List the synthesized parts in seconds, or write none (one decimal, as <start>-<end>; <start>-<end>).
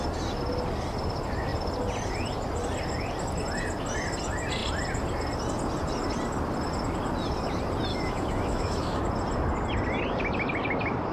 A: 7.9-9.0